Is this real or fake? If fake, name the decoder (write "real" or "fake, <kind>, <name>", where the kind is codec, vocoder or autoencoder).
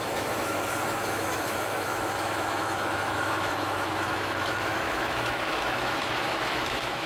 fake, autoencoder, DAC-VAE